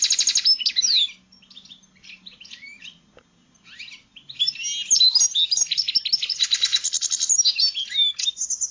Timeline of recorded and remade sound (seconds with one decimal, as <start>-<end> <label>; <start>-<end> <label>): 0.0-8.7 recorded